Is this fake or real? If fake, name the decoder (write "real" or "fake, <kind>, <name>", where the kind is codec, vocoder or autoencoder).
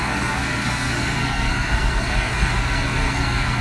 fake, codec, SNAC